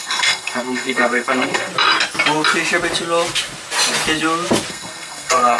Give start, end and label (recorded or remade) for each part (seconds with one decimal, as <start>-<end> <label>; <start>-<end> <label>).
0.0-1.7 remade; 1.7-4.7 recorded; 4.7-5.6 remade